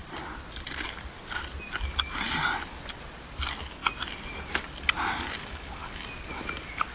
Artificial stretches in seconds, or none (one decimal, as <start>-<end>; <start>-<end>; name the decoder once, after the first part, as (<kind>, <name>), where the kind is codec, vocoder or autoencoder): none